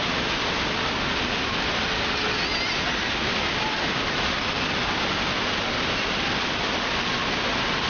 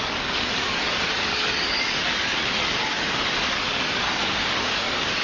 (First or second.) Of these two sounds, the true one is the first